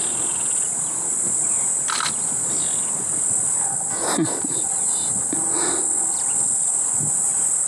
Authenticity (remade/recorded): recorded